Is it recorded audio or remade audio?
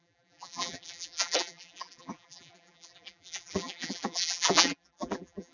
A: remade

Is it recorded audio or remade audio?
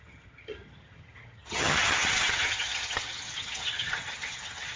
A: remade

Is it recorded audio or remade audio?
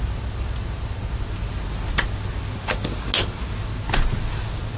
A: recorded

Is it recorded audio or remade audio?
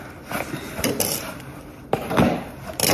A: recorded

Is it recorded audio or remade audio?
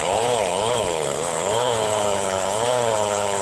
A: remade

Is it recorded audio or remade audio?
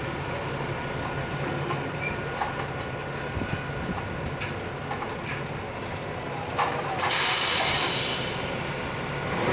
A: recorded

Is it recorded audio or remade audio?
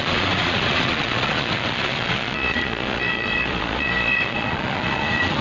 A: remade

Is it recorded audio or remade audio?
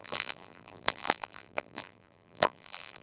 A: remade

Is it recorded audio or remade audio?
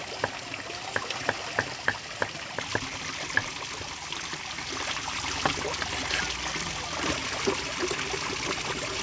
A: recorded